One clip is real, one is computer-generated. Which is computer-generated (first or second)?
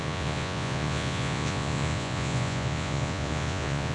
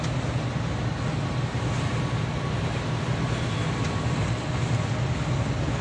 first